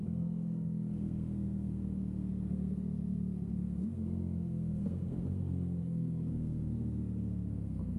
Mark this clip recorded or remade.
remade